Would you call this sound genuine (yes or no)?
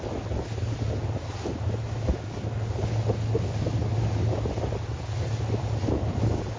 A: yes